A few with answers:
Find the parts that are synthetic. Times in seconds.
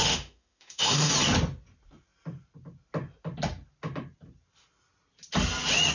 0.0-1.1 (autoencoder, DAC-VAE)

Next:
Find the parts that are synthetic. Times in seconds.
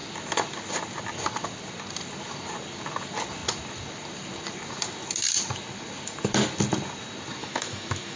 7.4-8.2 (autoencoder, DAC-VAE)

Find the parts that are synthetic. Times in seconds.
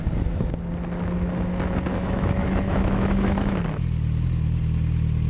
2.0-3.6 (autoencoder, DAC-VAE)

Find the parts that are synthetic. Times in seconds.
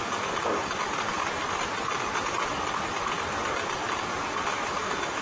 4.5-5.2 (autoencoder, DAC-VAE)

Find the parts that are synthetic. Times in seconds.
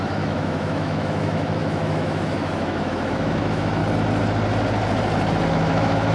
0.0-3.8 (autoencoder, DAC-VAE); 5.5-6.1